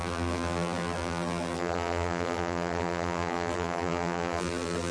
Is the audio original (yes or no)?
no